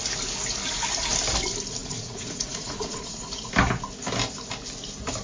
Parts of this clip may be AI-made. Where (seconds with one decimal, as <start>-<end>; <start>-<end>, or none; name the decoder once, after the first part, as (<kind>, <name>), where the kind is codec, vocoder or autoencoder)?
1.8-3.5 (vocoder, Vocos)